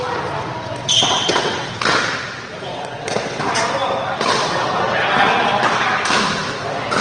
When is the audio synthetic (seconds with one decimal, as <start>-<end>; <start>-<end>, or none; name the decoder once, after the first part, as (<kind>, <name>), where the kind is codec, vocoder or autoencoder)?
0.8-1.7 (vocoder, WaveNeXt); 2.7-3.4